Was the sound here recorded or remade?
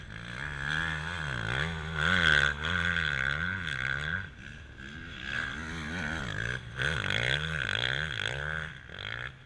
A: recorded